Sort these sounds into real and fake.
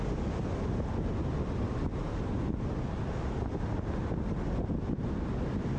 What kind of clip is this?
real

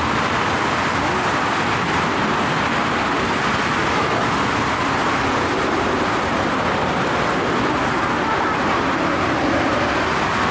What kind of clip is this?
real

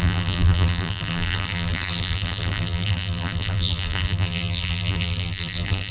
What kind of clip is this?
fake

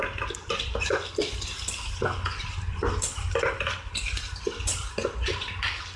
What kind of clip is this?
fake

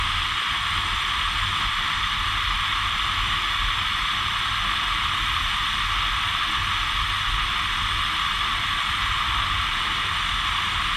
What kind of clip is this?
real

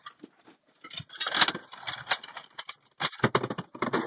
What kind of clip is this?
real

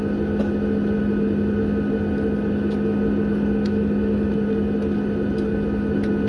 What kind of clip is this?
real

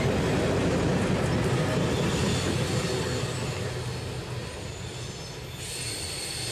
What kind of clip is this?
real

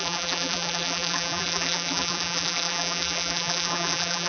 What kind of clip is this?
fake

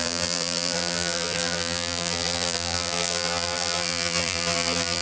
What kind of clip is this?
fake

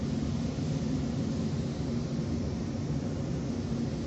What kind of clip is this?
real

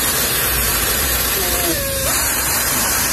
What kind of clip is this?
fake